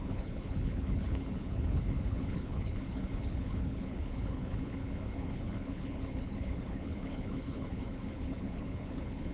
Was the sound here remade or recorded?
remade